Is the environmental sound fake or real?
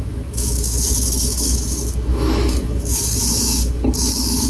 fake